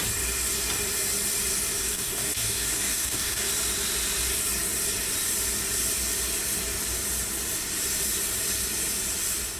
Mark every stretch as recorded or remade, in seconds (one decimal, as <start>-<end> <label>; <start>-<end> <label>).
0.0-1.8 recorded; 1.8-3.5 remade; 3.5-9.6 recorded